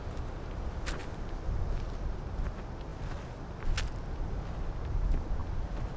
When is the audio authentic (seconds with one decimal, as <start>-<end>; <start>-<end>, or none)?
0.0-6.0